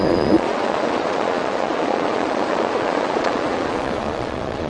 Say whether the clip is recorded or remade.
remade